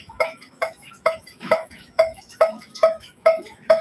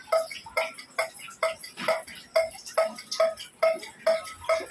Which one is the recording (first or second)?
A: second